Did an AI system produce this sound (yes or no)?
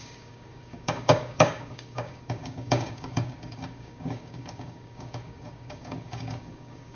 yes